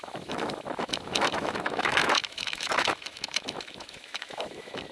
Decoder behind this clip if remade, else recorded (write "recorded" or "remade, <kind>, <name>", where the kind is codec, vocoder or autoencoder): remade, autoencoder, DAC-VAE